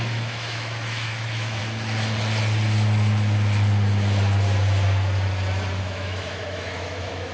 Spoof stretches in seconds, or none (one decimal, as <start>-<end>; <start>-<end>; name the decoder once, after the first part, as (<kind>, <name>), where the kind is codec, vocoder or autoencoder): 0.0-1.6 (autoencoder, DAC-VAE); 5.8-7.3